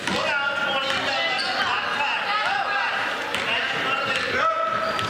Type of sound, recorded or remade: recorded